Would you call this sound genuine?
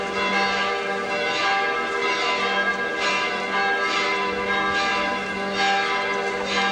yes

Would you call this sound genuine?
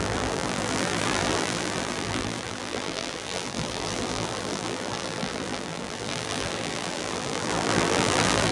no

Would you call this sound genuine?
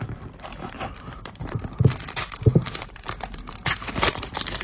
no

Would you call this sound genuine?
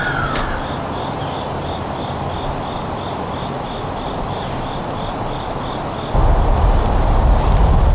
yes